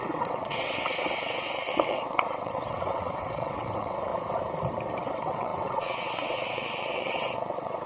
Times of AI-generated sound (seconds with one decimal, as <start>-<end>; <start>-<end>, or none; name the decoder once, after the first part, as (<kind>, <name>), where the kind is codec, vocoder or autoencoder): 0.0-4.1 (vocoder, WaveNeXt); 5.0-7.9